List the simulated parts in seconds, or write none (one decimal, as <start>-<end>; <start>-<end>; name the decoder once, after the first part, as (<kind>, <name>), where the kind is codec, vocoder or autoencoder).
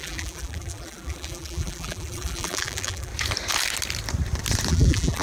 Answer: 0.0-3.1 (vocoder, BigVGAN v2); 4.7-5.2